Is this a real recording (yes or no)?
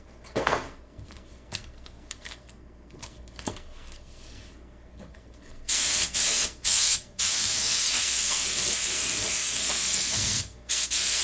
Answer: no